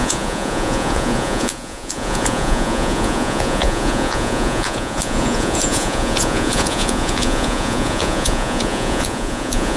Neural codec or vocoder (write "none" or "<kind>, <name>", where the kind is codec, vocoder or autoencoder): vocoder, Vocos